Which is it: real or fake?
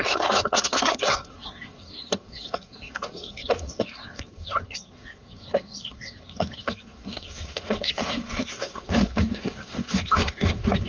fake